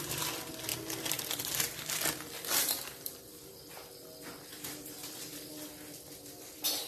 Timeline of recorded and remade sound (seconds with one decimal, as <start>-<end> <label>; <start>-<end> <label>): 0.0-6.9 recorded